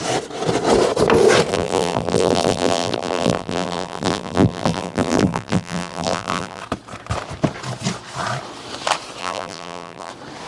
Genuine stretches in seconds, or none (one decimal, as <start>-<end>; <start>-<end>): 0.0-1.5; 6.6-9.2; 10.1-10.5